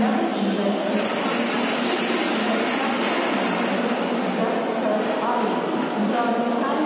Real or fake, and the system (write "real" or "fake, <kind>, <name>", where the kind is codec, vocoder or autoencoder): real